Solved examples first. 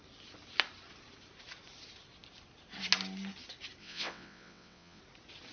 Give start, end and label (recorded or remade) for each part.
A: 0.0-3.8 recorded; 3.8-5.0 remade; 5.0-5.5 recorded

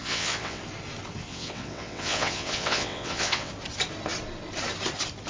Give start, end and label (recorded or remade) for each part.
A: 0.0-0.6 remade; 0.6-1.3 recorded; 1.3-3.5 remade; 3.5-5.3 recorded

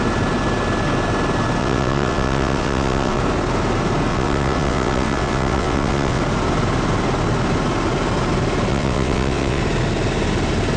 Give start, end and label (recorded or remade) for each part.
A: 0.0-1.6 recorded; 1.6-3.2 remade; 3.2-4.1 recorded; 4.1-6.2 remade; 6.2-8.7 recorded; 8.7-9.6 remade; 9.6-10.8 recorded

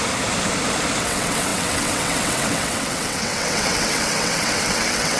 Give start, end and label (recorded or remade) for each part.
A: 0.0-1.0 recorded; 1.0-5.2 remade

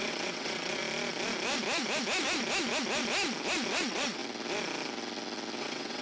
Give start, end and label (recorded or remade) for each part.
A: 0.0-0.8 remade; 0.8-3.7 recorded; 3.7-4.2 remade; 4.2-5.6 recorded; 5.6-6.0 remade